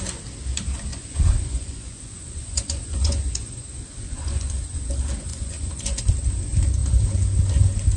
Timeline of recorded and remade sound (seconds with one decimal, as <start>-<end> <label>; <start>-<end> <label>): 0.0-0.9 recorded; 0.9-4.8 remade; 4.8-5.3 recorded; 5.3-6.0 remade; 6.0-8.0 recorded